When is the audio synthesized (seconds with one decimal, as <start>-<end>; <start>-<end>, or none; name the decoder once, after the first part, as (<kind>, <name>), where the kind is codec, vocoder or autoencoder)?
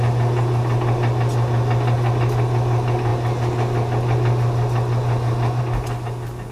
none